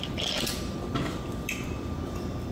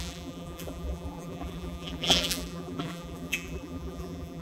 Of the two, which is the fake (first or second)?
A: second